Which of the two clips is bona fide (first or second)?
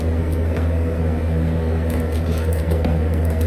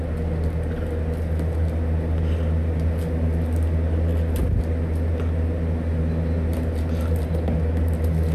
second